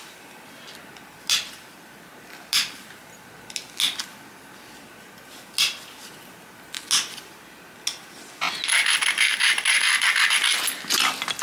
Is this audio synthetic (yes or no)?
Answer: no